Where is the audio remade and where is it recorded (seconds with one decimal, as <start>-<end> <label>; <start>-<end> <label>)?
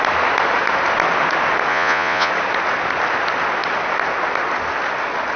0.0-1.7 recorded; 1.7-2.3 remade; 2.3-5.4 recorded